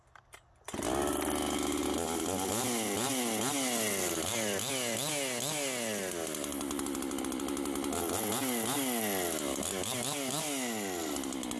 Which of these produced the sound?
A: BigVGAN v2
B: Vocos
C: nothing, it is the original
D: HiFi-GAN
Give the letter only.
C